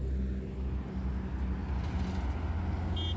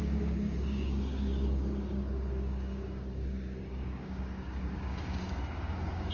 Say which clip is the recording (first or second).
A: first